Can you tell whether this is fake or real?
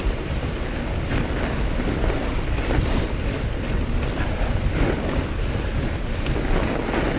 real